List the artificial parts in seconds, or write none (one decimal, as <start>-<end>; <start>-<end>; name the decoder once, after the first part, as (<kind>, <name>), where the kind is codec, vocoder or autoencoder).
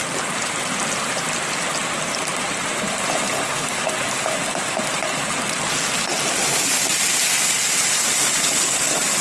none